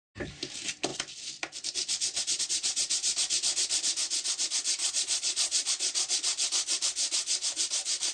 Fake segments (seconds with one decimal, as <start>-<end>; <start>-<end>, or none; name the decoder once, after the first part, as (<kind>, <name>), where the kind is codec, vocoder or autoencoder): 4.8-5.7 (vocoder, Vocos)